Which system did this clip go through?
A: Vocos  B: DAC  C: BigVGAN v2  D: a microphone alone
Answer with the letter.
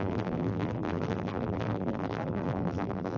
C